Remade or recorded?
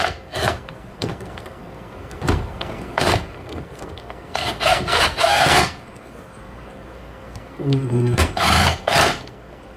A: remade